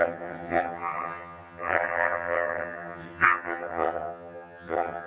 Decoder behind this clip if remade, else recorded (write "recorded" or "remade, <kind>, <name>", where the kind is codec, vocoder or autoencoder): remade, vocoder, HiFi-GAN